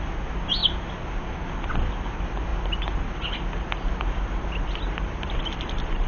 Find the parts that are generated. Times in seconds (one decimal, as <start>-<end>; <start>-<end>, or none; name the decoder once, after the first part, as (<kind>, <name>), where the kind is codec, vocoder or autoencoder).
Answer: none